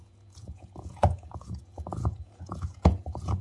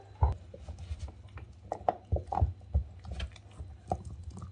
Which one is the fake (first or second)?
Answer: first